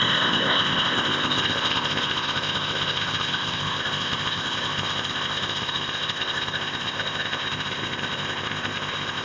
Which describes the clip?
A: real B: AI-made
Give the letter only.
B